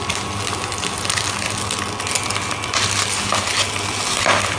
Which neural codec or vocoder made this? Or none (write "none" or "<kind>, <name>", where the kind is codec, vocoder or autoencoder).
none